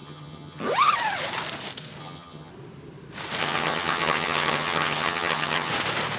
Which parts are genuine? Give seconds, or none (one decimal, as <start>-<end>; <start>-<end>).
0.6-2.0; 2.5-3.4; 5.7-6.2